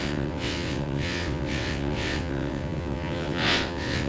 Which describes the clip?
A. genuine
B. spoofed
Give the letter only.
B